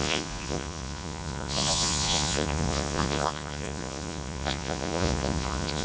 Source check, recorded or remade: remade